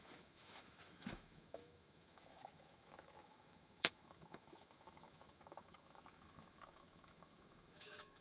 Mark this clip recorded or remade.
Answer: remade